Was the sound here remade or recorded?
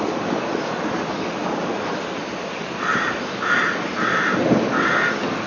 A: recorded